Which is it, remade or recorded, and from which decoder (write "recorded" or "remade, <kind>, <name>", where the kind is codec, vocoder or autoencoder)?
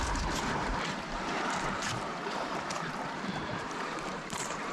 remade, vocoder, BigVGAN v2